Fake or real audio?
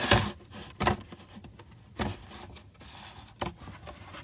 real